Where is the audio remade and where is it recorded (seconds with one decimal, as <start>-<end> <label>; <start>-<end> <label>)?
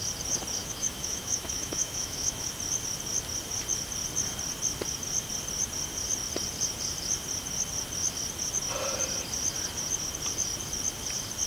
0.0-0.6 recorded; 0.6-2.5 remade; 2.5-11.5 recorded